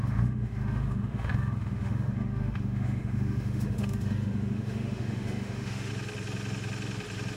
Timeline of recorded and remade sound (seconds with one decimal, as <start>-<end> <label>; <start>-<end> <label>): 0.0-5.9 remade; 5.9-7.4 recorded